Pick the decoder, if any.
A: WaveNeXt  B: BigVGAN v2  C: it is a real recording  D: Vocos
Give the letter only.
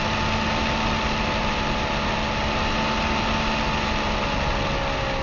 C